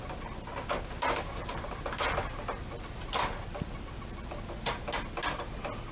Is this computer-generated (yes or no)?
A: no